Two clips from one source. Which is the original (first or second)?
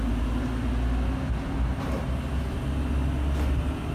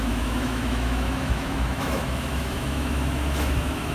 first